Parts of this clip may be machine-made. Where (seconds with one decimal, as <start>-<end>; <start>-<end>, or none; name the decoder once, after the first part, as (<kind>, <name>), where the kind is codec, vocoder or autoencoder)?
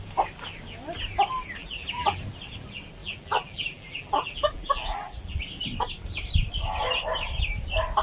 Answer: 1.6-2.2 (vocoder, BigVGAN v2); 3.0-5.4